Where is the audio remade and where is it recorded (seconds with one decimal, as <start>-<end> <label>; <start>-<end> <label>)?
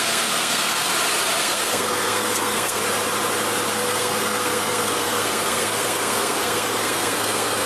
0.0-0.9 remade; 0.9-1.4 recorded; 1.4-2.8 remade; 2.8-3.7 recorded; 3.7-7.7 remade